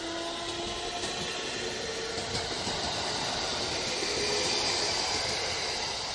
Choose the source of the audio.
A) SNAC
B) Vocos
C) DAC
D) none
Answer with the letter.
D